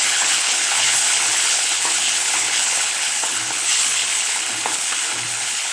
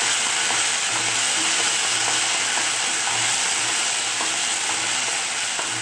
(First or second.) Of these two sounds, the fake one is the first